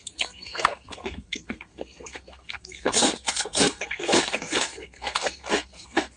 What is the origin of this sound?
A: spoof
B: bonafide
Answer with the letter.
A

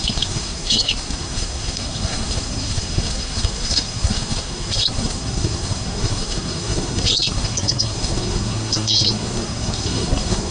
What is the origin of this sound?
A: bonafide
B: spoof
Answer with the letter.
B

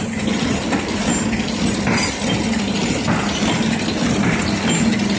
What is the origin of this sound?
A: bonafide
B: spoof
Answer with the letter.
A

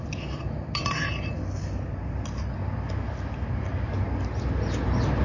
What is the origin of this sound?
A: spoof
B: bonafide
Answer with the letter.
B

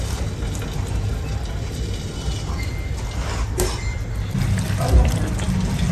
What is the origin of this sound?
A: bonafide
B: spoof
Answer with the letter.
A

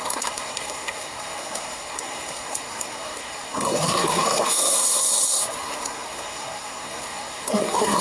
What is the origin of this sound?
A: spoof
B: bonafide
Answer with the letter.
A